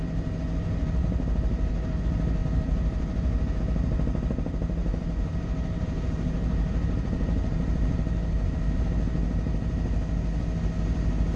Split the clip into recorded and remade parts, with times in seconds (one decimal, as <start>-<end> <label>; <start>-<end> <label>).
0.0-1.0 recorded; 1.0-2.0 remade; 2.0-2.4 recorded; 2.4-3.6 remade; 3.6-4.8 recorded; 4.8-8.9 remade; 8.9-11.4 recorded